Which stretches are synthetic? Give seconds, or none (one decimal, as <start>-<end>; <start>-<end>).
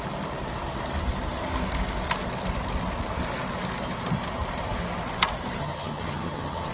5.6-6.7